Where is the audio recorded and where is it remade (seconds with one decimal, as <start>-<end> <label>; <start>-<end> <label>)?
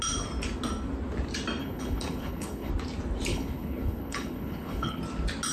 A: 0.0-1.6 recorded; 1.6-2.7 remade; 2.7-3.3 recorded; 3.3-5.0 remade; 5.0-5.5 recorded